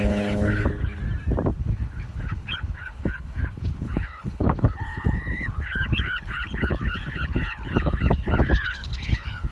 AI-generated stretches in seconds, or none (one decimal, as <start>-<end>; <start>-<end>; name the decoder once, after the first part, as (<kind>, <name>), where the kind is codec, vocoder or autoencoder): 0.0-1.0 (codec, HILCodec); 1.6-9.5